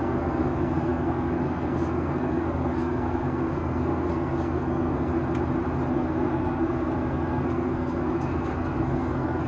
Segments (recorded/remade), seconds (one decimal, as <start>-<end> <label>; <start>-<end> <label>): 0.0-5.1 remade; 5.1-5.9 recorded; 5.9-9.5 remade